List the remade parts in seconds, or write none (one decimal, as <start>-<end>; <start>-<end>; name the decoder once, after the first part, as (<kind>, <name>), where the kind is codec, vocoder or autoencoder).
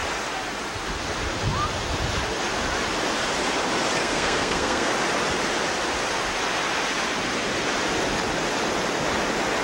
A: 4.0-4.9 (codec, SNAC)